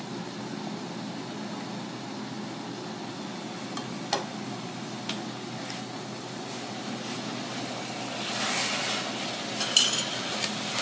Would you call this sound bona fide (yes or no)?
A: yes